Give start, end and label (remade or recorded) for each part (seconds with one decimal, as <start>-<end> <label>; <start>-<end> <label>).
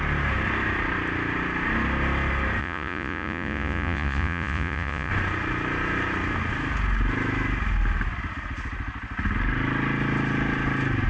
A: 0.0-2.6 recorded; 2.6-5.1 remade; 5.1-11.1 recorded